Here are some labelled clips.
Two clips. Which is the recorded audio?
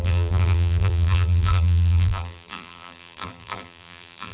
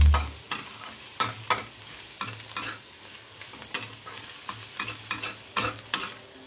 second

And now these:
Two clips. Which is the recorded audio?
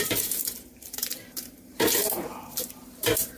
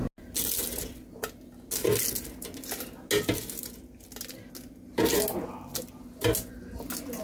second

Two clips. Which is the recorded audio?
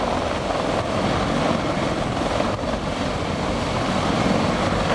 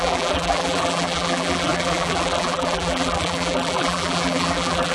first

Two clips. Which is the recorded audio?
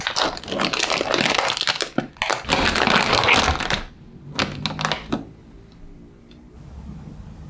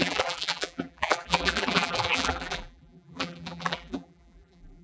first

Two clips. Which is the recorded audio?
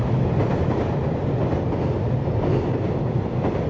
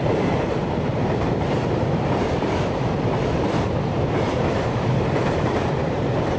first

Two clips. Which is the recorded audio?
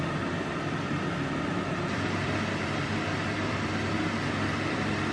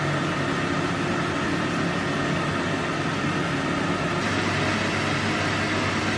second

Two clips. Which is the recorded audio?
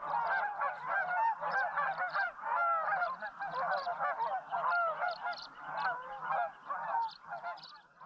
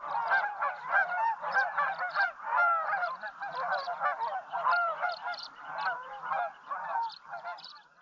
first